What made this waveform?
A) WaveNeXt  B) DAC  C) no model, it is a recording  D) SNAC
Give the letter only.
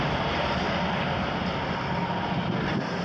C